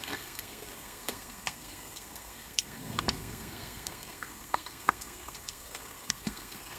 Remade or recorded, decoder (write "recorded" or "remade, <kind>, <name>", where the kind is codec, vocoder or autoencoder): remade, codec, SNAC